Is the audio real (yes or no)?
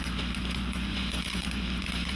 no